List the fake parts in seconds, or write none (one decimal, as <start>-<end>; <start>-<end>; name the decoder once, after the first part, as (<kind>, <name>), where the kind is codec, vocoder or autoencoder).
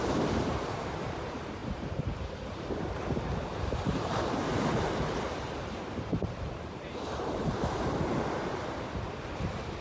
0.0-9.8 (vocoder, BigVGAN v2)